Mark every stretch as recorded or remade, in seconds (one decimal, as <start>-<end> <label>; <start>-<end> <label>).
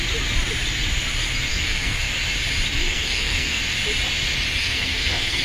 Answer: 0.0-1.5 recorded; 1.5-2.1 remade; 2.1-2.8 recorded; 2.8-3.6 remade; 3.6-4.6 recorded; 4.6-5.4 remade